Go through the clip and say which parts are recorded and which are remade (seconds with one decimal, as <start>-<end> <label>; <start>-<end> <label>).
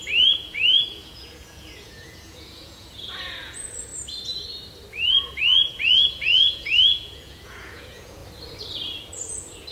0.0-3.9 remade; 3.9-4.9 recorded; 4.9-8.2 remade; 8.2-9.0 recorded; 9.0-9.7 remade